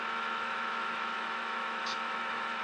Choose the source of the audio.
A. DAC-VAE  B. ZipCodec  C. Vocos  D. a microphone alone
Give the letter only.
A